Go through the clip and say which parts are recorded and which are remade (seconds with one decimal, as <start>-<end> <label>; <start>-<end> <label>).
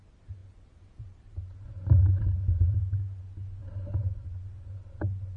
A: 0.0-0.4 recorded; 0.4-3.2 remade; 3.2-3.6 recorded; 3.6-4.4 remade; 4.4-5.4 recorded